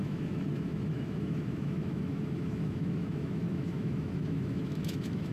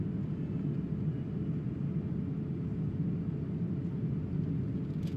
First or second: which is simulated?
first